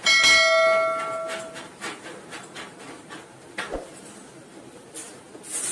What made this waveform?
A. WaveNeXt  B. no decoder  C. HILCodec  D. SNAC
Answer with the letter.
B